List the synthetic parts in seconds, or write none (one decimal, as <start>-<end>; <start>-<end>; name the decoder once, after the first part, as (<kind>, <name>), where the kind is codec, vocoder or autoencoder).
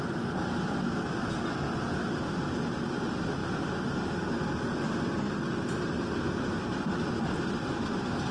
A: 3.4-4.1 (vocoder, BigVGAN v2)